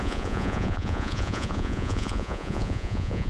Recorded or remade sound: remade